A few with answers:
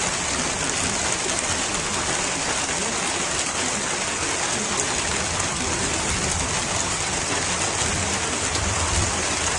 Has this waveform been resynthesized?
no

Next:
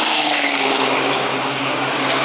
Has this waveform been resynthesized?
yes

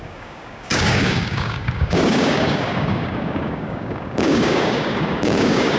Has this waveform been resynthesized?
yes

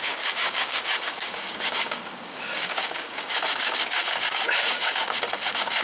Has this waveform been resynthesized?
yes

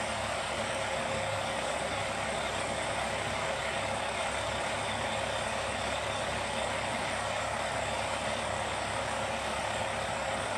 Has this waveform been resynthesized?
yes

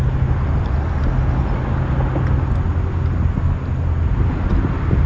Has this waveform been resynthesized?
no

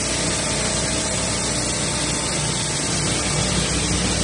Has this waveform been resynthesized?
no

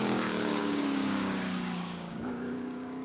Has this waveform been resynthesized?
yes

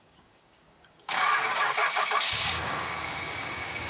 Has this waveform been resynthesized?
yes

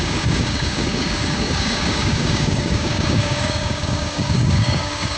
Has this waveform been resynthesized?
yes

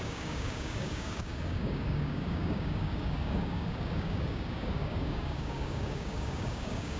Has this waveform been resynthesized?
yes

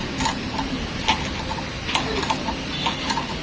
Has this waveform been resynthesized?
no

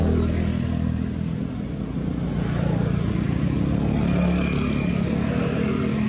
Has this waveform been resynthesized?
no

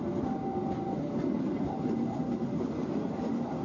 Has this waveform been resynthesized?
no